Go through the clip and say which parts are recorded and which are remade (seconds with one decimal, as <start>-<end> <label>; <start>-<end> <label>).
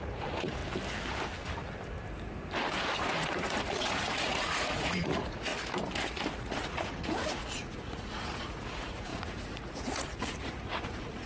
0.0-0.6 remade; 0.6-3.3 recorded; 3.3-5.5 remade; 5.5-6.4 recorded; 6.4-11.3 remade